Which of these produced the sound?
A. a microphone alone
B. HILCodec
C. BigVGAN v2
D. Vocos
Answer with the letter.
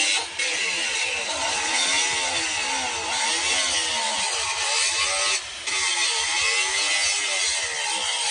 A